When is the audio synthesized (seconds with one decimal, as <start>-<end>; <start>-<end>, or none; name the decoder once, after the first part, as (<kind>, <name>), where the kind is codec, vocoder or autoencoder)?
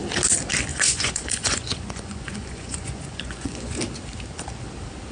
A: 0.7-3.8 (vocoder, Vocos)